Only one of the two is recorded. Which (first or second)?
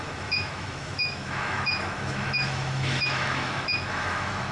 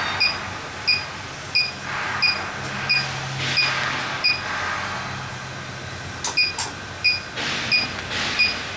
second